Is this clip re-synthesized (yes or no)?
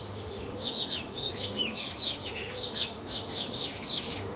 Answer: yes